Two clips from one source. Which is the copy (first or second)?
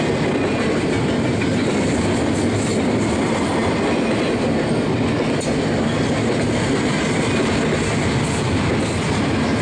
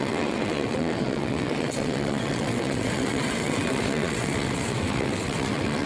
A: second